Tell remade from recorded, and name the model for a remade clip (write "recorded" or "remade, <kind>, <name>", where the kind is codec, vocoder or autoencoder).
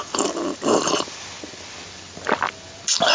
recorded